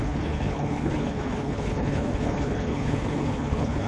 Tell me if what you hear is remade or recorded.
remade